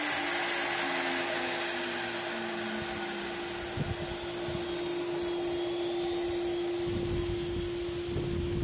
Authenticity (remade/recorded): recorded